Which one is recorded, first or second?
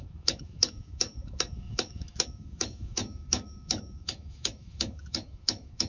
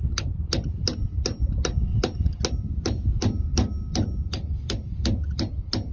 second